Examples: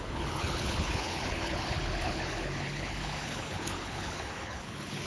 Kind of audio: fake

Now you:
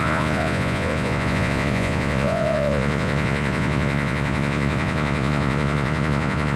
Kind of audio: fake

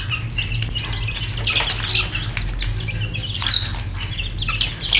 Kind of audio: real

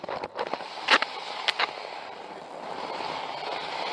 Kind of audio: real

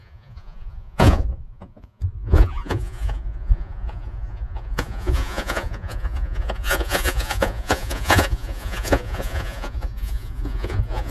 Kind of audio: fake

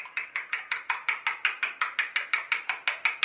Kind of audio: real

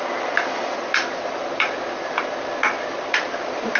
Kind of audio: real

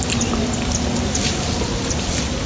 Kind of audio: real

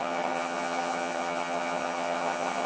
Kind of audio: fake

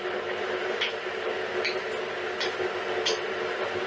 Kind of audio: real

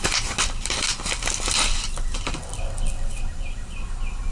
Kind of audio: real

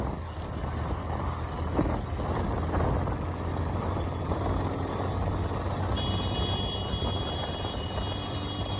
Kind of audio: real